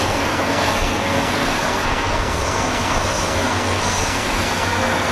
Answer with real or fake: fake